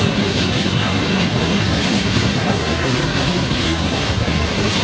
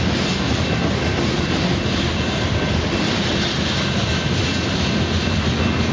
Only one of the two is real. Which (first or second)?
second